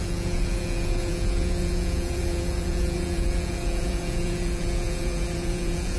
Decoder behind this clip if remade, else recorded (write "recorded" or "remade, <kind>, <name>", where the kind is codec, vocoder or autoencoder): remade, vocoder, Vocos